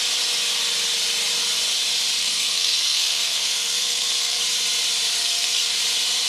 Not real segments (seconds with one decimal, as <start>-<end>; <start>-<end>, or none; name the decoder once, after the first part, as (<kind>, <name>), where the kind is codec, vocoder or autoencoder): 2.2-4.4 (codec, SNAC); 5.2-5.8